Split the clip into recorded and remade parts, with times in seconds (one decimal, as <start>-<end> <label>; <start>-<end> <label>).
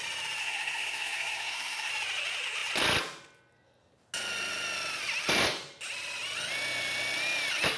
0.0-0.4 recorded; 0.4-1.9 remade; 1.9-7.8 recorded